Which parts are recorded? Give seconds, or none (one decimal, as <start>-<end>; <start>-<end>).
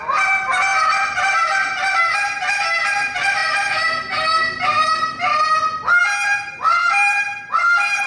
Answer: 0.0-6.8